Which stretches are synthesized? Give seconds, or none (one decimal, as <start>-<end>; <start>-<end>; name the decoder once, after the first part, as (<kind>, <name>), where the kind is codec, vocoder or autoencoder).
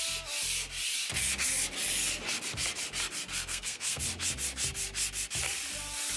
3.3-4.0 (codec, SNAC)